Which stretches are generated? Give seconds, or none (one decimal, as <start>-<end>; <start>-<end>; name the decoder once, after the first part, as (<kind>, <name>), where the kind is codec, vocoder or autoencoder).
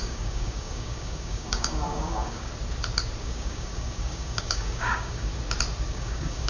0.0-2.5 (codec, DAC); 3.2-5.3; 5.9-6.5